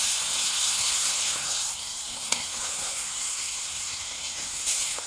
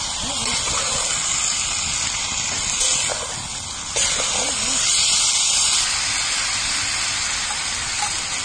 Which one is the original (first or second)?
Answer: second